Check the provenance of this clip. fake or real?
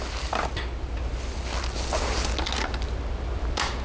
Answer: real